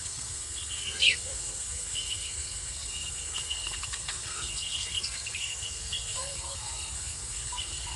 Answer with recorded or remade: remade